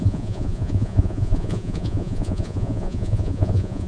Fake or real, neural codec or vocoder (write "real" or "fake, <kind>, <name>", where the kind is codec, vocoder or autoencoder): fake, vocoder, Vocos